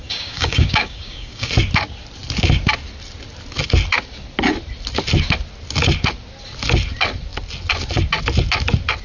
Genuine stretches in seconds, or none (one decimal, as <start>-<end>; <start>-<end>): 1.5-9.0